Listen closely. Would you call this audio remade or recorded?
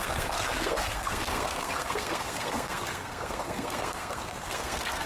remade